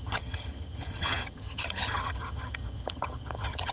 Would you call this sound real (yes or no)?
no